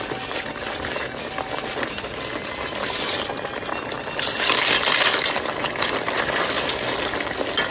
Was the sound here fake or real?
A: real